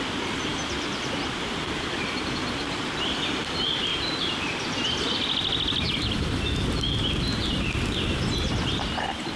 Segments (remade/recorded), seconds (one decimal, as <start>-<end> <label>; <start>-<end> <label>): 0.0-3.9 remade; 3.9-6.0 recorded; 6.0-9.4 remade